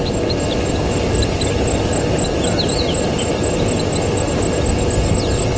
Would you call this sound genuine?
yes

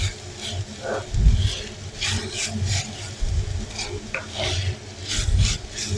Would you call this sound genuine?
yes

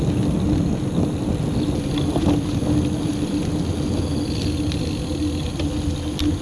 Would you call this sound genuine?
yes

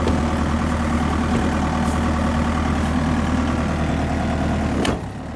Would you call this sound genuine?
yes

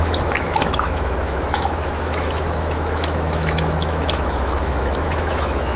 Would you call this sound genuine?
no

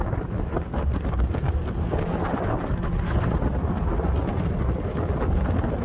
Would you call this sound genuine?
yes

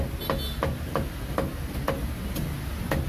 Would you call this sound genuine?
yes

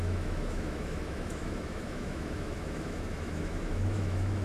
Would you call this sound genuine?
no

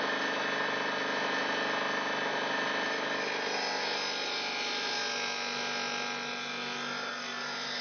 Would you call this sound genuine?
yes